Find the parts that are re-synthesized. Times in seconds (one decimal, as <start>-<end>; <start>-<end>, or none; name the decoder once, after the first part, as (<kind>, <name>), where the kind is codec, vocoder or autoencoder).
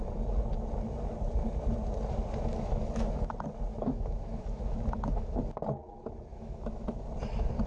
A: 2.5-3.3 (autoencoder, DAC-VAE); 3.7-5.4; 6.3-7.0